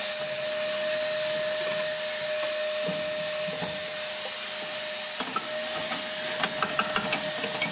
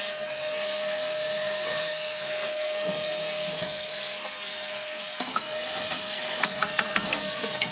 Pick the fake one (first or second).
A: second